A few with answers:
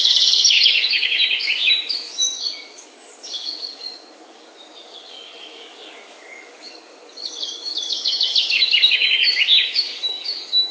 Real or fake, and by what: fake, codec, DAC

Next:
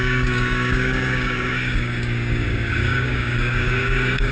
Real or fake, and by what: fake, codec, DAC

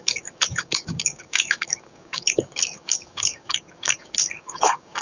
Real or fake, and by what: fake, codec, DAC